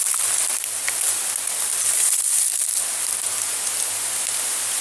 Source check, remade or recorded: recorded